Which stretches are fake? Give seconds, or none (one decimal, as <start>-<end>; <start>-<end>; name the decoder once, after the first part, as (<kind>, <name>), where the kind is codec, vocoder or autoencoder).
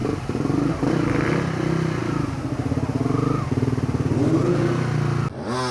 0.0-0.7 (vocoder, BigVGAN v2)